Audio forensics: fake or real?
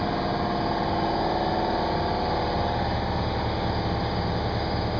real